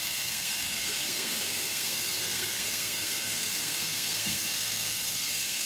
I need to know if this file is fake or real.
fake